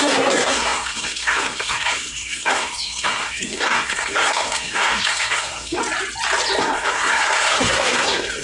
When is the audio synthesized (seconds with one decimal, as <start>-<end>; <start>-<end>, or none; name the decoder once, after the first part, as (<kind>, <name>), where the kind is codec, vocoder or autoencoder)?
0.0-5.8 (codec, SNAC); 6.6-8.4